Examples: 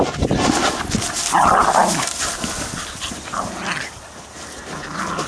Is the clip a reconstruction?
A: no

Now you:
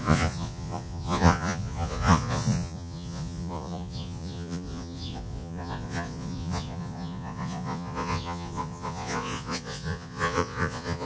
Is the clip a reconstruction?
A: yes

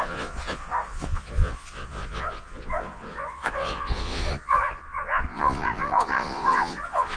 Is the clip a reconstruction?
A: yes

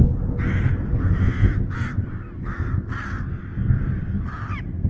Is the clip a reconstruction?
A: no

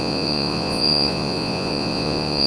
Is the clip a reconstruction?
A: yes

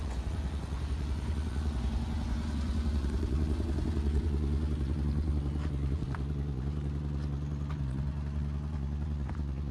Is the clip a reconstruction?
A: yes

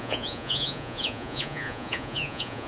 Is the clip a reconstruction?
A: yes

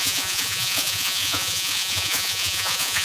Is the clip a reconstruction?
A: yes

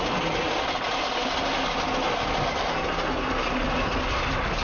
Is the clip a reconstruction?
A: no